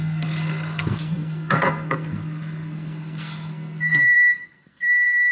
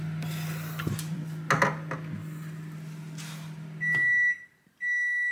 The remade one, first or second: first